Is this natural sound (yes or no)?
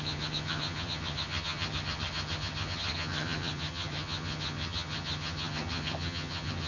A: no